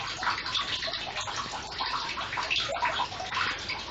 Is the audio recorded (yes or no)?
no